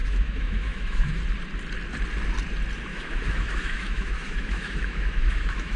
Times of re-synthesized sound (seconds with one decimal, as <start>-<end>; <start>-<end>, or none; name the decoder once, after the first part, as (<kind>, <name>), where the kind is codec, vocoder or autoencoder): 0.0-1.2 (autoencoder, DAC-VAE); 2.9-5.8